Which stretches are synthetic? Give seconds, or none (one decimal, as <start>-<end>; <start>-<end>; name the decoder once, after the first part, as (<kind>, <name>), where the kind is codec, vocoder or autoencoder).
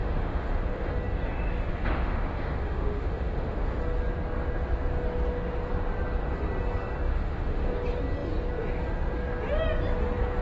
0.0-0.9 (autoencoder, DAC-VAE); 1.7-3.8; 7.1-7.7